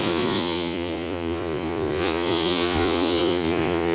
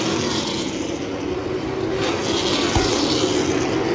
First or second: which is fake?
first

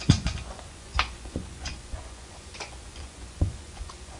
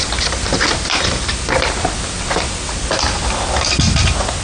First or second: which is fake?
first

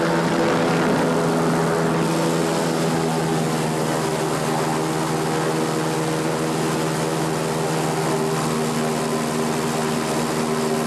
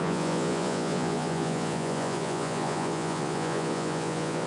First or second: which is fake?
second